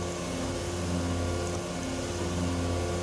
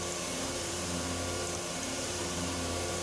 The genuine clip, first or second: first